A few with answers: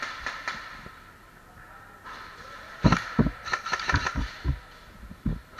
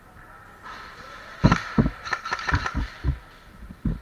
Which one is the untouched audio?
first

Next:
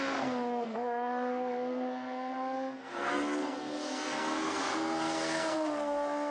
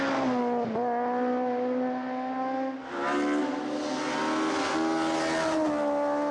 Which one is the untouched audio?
second